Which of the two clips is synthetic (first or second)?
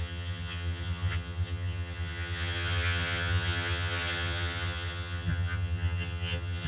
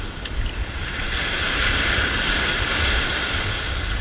first